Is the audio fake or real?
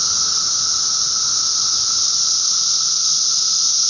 real